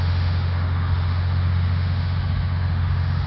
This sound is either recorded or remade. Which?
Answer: remade